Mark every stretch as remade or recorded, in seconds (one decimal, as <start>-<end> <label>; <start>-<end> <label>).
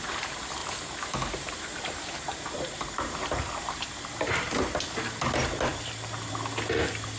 0.0-0.6 recorded; 0.6-4.8 remade; 4.8-7.2 recorded